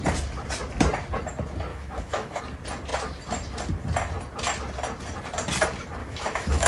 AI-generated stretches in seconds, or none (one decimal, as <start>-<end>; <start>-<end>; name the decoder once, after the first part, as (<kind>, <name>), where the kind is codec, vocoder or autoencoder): 1.7-2.4 (autoencoder, DAC-VAE); 6.0-6.7